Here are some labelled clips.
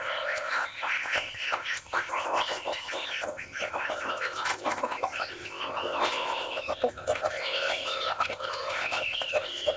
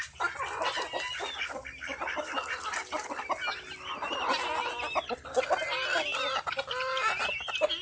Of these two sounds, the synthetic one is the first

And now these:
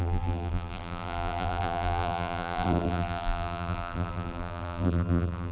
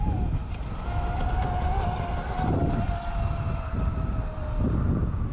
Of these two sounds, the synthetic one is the first